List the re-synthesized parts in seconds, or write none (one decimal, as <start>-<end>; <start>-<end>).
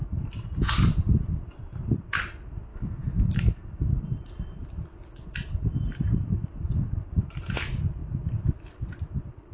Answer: 2.7-3.6